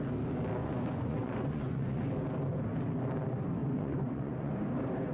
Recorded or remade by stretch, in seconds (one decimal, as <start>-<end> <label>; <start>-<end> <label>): 0.0-0.6 recorded; 0.6-2.1 remade; 2.1-3.6 recorded; 3.6-4.5 remade; 4.5-5.1 recorded